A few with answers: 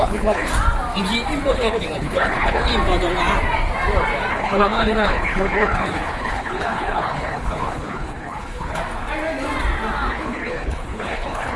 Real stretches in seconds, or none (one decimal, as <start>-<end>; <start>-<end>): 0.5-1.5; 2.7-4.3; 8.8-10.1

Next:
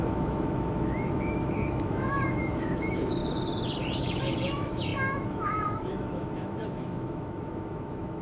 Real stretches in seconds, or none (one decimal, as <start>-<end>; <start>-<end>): 3.2-4.0

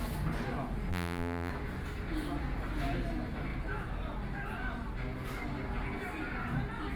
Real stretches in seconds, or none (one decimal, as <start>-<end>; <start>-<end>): 0.0-0.9; 1.5-7.0

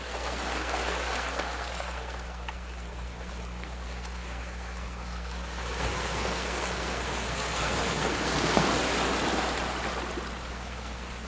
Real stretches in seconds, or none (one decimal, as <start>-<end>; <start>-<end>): 8.7-10.5